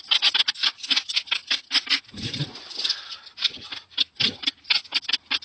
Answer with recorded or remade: recorded